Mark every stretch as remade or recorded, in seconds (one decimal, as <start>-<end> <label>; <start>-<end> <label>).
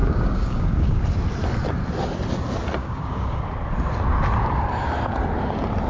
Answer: 0.0-1.0 remade; 1.0-2.8 recorded; 2.8-3.4 remade; 3.4-5.9 recorded